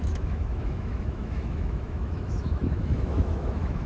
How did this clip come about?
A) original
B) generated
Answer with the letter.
B